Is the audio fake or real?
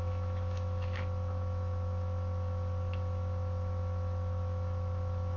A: fake